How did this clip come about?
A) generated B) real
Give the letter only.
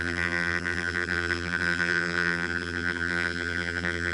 A